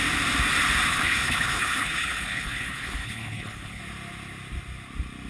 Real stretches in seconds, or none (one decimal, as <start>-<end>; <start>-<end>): 0.0-0.9; 3.8-5.3